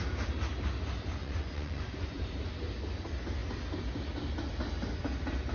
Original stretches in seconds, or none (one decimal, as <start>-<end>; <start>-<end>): 0.0-1.2; 2.2-5.5